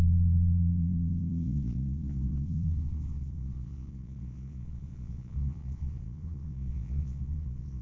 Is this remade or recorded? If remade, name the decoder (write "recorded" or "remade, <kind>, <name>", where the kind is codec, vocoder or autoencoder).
remade, vocoder, Vocos